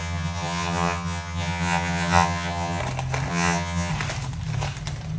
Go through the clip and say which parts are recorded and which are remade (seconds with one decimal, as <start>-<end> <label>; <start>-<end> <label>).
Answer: 0.0-2.8 remade; 2.8-3.3 recorded; 3.3-3.9 remade; 3.9-5.2 recorded